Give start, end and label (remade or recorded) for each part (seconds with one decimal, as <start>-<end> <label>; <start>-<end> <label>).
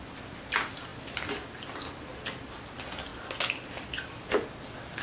0.0-5.0 recorded